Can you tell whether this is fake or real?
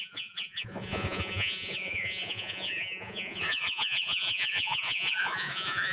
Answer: fake